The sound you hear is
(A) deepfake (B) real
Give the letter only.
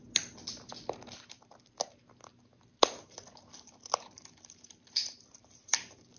B